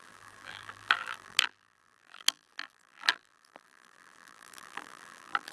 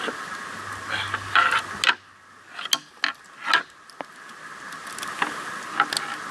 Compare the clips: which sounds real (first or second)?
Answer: second